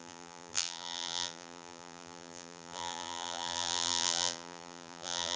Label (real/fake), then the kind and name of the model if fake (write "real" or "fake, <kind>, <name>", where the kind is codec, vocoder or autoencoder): fake, vocoder, BigVGAN v2